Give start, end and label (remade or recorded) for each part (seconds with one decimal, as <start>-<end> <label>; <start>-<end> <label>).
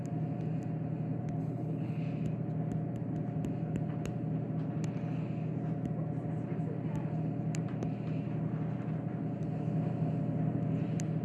0.0-1.4 recorded; 1.4-2.0 remade; 2.0-11.2 recorded